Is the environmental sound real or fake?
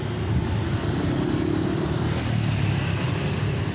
real